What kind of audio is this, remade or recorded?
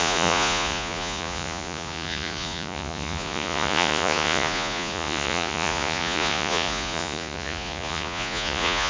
remade